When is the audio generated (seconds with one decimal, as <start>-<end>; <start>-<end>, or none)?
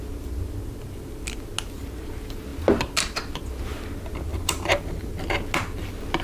4.3-5.1